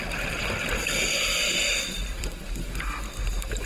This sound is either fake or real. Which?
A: fake